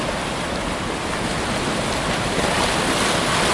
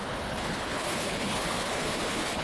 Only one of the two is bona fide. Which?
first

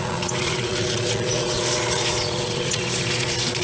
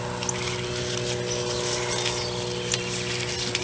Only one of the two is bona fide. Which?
second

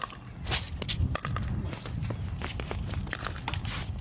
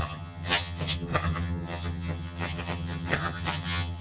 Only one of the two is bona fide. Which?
first